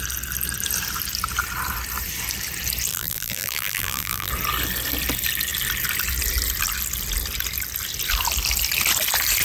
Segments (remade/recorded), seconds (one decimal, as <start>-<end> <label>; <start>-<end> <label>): 0.0-2.9 recorded; 2.9-4.3 remade; 4.3-9.4 recorded